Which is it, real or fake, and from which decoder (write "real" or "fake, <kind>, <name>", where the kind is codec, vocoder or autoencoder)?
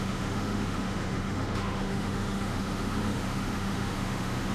fake, autoencoder, DAC-VAE